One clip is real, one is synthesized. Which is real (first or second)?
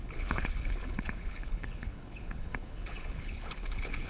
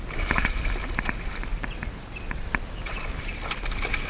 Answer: second